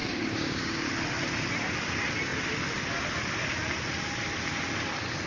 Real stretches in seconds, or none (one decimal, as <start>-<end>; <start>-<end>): 0.9-5.3